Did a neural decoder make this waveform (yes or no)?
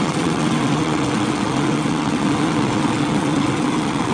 yes